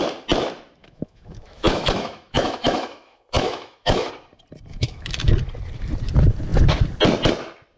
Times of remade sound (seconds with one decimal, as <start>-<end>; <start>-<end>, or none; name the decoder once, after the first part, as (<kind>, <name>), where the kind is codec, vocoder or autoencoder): 0.8-4.1 (autoencoder, DAC-VAE); 4.7-5.3